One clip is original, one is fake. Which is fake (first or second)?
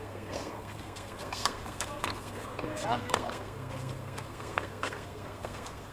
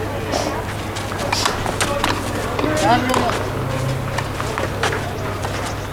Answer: first